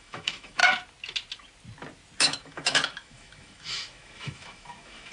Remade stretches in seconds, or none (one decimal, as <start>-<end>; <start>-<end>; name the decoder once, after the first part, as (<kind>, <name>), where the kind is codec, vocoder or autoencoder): 0.0-0.6 (autoencoder, DAC-VAE); 2.2-5.1